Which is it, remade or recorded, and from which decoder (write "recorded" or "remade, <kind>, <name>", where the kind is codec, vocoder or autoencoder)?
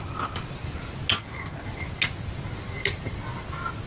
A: recorded